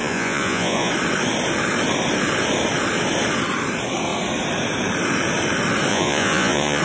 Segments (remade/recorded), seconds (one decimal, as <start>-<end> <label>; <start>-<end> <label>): 0.0-0.9 remade; 0.9-5.9 recorded; 5.9-6.8 remade